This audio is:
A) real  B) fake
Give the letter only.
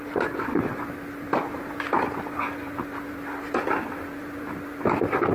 A